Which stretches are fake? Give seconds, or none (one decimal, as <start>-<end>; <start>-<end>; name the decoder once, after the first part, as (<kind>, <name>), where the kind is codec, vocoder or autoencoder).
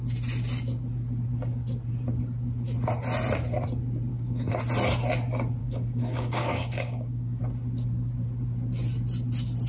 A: 4.1-4.6 (codec, DAC); 5.6-7.4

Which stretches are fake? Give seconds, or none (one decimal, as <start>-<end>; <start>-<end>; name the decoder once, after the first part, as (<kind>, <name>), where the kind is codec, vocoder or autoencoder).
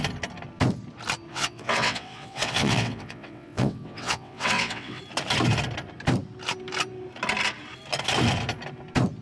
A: 1.3-5.0 (vocoder, WaveNeXt)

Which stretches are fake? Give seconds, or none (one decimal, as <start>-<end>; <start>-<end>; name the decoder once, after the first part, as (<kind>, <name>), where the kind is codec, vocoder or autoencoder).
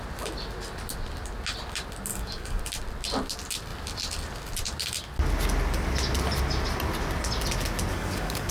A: 2.1-2.6 (codec, DAC); 7.9-8.5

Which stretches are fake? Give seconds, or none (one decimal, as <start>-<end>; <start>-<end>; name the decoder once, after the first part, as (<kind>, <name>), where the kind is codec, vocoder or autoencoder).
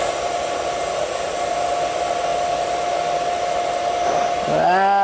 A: none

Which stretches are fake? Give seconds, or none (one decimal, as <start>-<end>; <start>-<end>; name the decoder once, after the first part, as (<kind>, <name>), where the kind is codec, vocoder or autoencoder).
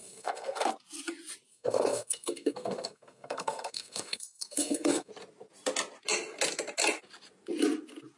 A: 0.0-0.7 (codec, SNAC); 1.5-5.1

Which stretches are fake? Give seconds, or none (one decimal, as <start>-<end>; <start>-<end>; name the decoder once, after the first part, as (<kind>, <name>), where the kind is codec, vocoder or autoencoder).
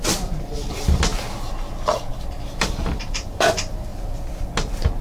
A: 0.0-1.1 (vocoder, BigVGAN v2); 2.1-3.9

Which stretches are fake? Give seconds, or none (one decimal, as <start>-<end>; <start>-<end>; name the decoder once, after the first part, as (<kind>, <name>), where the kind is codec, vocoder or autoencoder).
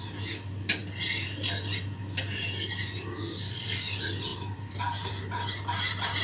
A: none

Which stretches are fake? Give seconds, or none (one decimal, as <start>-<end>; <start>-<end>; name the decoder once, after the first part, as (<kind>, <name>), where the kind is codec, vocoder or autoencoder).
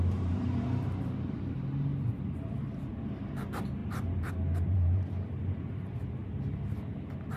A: 0.0-1.9 (vocoder, BigVGAN v2); 2.7-6.2